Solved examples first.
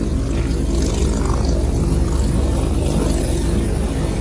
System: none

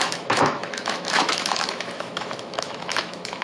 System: autoencoder, DAC-VAE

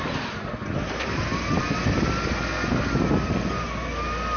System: none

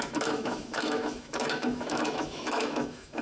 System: autoencoder, DAC-VAE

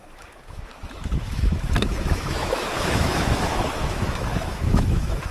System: autoencoder, DAC-VAE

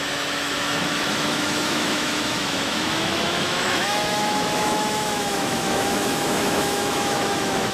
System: autoencoder, DAC-VAE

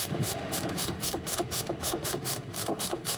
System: autoencoder, DAC-VAE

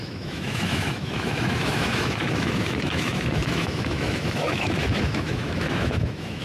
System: autoencoder, DAC-VAE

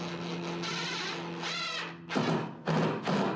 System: none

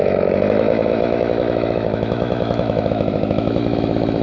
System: autoencoder, DAC-VAE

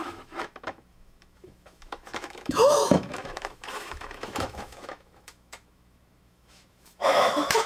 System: autoencoder, DAC-VAE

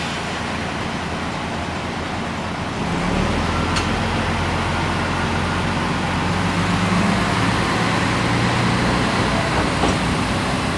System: none